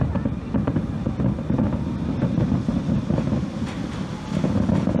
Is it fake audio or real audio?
real